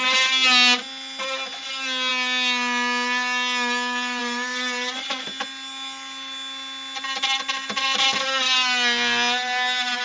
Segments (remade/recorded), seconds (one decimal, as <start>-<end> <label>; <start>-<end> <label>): 0.0-10.0 recorded